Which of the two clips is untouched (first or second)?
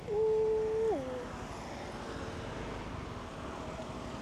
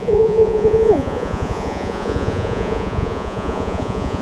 first